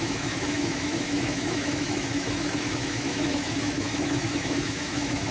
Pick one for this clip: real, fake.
fake